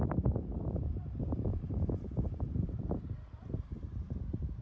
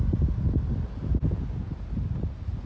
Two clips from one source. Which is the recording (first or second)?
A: second